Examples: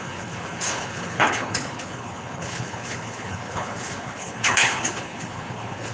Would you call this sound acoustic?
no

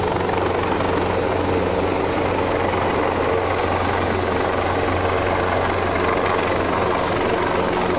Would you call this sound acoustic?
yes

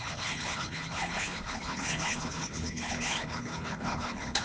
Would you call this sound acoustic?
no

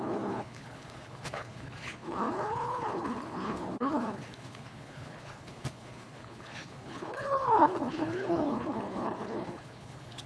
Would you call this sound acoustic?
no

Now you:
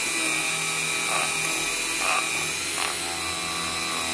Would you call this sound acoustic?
yes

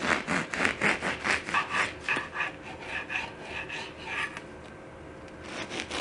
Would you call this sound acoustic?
yes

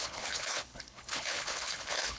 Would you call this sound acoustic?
no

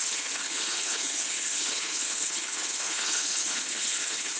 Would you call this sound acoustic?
no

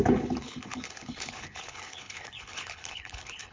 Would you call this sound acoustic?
no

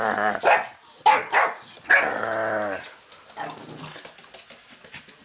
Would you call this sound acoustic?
yes